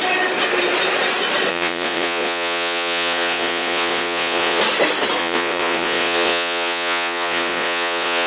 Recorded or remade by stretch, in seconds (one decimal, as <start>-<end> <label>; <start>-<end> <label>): 0.0-1.5 recorded; 1.5-4.6 remade; 4.6-5.2 recorded; 5.2-8.3 remade